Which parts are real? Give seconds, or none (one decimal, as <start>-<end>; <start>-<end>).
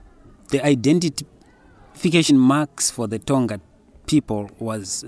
2.3-2.7; 4.2-5.1